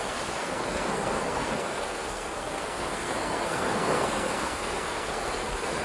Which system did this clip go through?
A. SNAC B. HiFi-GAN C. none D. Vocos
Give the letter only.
A